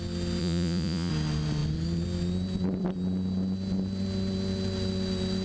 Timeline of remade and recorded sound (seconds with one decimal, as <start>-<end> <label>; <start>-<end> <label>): 0.0-0.4 recorded; 0.4-1.1 remade; 1.1-5.4 recorded